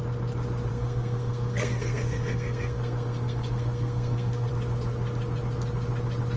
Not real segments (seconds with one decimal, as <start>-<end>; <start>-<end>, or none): 0.7-4.5